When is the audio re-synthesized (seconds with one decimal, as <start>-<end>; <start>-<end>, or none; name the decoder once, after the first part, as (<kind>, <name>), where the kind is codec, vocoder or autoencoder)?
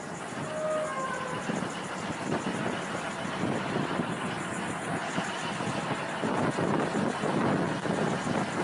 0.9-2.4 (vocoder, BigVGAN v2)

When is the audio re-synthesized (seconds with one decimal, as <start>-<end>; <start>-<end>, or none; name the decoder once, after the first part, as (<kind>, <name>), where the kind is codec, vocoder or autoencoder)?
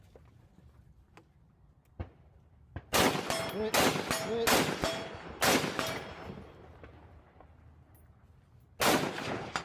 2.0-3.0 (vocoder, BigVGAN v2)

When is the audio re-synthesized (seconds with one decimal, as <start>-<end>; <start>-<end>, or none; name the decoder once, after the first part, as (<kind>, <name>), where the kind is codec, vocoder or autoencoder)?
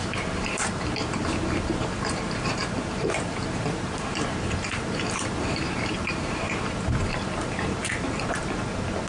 0.0-8.4 (vocoder, BigVGAN v2)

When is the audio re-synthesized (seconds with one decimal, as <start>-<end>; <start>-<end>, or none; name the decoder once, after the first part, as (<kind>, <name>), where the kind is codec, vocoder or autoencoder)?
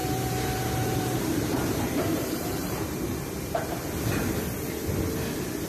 0.0-3.2 (vocoder, BigVGAN v2)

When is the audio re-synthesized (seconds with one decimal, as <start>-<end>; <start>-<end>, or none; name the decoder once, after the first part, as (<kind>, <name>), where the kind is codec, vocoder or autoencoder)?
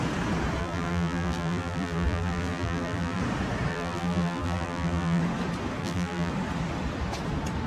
0.6-3.2 (vocoder, BigVGAN v2); 3.7-5.2; 5.8-6.3